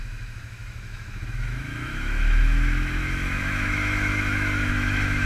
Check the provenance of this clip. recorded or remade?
remade